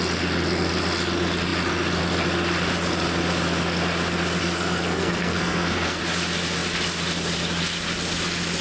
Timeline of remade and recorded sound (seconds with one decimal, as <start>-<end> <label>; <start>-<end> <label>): 0.0-4.4 recorded; 4.4-6.0 remade; 6.0-8.6 recorded